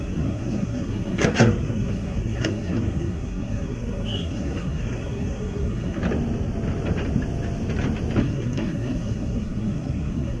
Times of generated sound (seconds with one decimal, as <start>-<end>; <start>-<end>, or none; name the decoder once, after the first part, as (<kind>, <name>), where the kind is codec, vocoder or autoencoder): 0.0-6.0 (codec, SNAC); 8.2-10.4